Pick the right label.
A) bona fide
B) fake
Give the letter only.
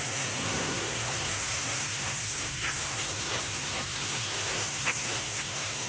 B